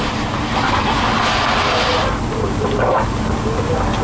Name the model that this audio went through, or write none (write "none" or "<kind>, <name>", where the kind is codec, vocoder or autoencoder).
none